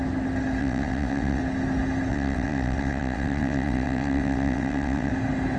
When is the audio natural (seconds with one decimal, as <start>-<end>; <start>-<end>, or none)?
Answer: 0.0-0.6; 1.4-2.1; 5.1-5.6